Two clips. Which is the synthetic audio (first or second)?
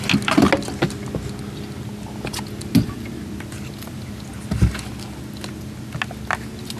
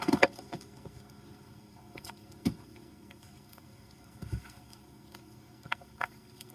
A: second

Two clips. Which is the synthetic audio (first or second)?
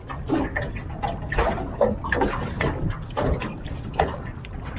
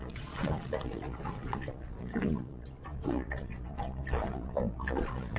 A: second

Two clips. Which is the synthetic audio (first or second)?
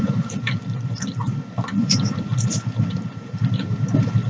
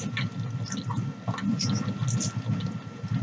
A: first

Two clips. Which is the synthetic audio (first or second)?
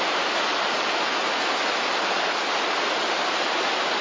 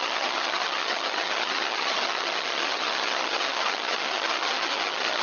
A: second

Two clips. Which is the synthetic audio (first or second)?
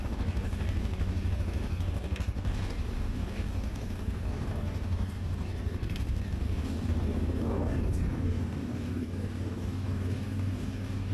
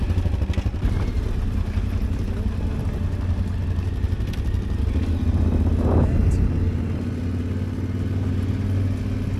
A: first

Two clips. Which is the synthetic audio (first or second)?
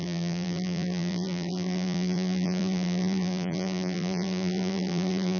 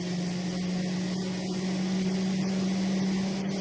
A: first